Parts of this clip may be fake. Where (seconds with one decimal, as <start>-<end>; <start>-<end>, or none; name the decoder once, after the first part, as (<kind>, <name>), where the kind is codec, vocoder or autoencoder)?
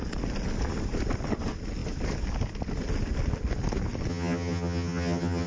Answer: 4.1-5.5 (vocoder, HiFi-GAN)